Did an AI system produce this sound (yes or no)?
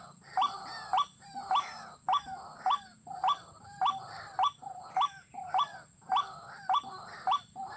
no